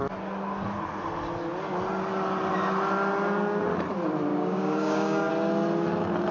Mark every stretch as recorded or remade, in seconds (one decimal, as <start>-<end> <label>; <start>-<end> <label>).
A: 0.0-4.3 recorded; 4.3-5.3 remade; 5.3-6.3 recorded